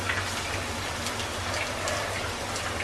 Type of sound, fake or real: real